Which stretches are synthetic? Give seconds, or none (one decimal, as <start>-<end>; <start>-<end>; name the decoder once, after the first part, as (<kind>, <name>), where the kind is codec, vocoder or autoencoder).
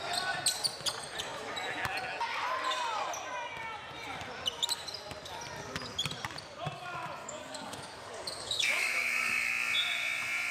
7.2-9.5 (codec, DAC)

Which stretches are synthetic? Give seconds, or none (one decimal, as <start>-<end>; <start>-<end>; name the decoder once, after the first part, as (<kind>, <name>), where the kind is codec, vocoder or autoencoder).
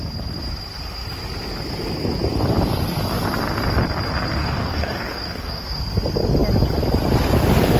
4.4-5.8 (codec, DAC)